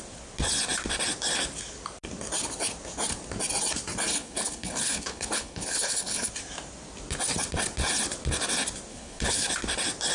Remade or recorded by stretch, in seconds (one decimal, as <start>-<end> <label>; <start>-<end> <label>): 0.0-4.1 recorded; 4.1-6.3 remade; 6.3-8.9 recorded; 8.9-9.5 remade; 9.5-10.1 recorded